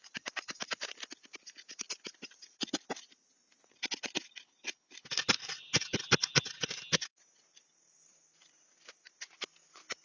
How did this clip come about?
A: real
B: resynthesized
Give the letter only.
A